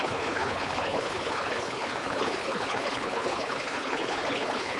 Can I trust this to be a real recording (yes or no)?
no